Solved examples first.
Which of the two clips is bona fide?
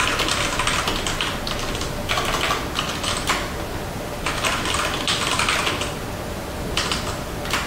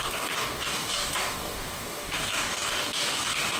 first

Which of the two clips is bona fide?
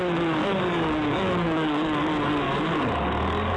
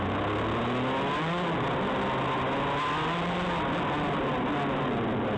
second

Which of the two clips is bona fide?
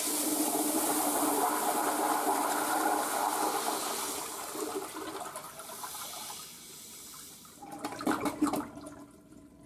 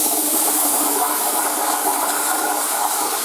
first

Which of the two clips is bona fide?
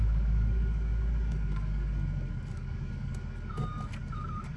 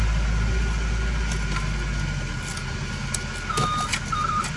second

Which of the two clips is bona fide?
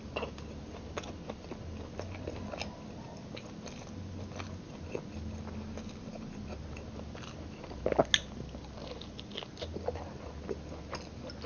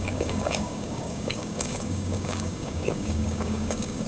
first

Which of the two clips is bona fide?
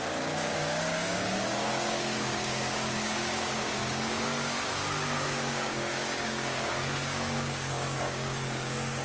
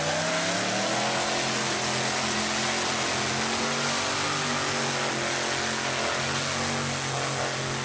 second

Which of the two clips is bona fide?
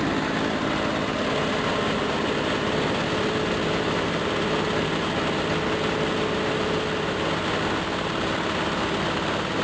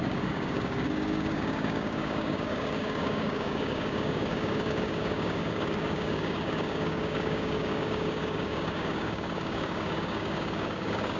first